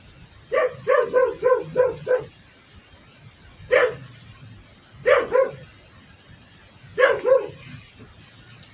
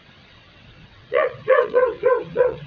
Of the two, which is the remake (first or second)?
second